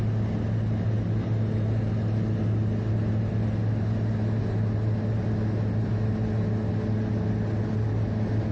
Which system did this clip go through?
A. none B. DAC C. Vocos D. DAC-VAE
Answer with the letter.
A